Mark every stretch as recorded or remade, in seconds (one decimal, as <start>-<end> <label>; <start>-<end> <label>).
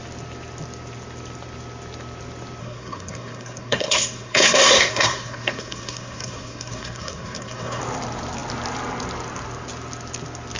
0.0-2.6 recorded; 2.6-7.8 remade; 7.8-10.6 recorded